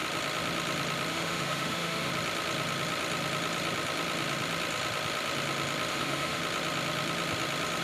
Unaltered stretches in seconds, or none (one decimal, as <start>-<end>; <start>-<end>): 0.0-1.1; 2.1-5.9; 6.4-7.8